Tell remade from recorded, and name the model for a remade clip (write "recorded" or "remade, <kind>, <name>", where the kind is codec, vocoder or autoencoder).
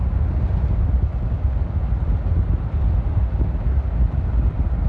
recorded